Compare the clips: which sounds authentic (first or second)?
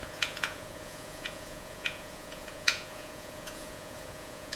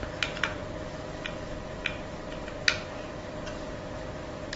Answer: second